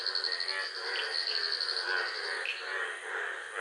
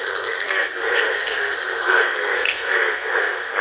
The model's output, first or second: second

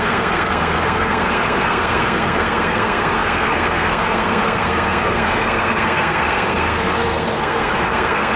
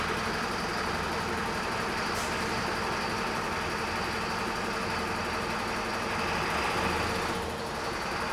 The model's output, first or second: first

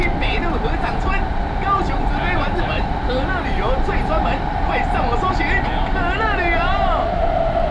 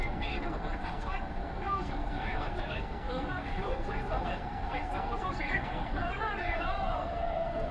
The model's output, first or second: second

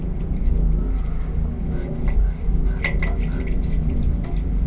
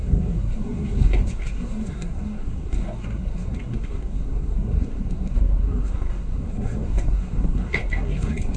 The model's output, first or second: second